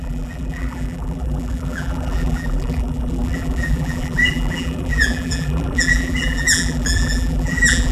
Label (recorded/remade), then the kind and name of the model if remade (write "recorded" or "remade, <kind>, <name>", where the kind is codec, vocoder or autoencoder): remade, vocoder, BigVGAN v2